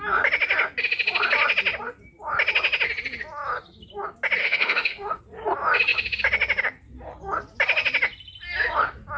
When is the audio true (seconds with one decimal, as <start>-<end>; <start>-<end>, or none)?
0.0-4.4; 5.2-9.2